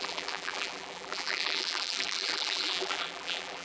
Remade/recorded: remade